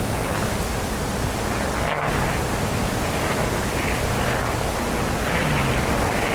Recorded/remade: recorded